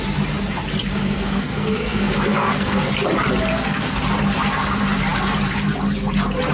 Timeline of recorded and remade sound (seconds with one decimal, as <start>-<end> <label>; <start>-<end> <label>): 0.0-0.9 recorded; 0.9-2.9 remade; 2.9-3.5 recorded; 3.5-4.0 remade; 4.0-6.5 recorded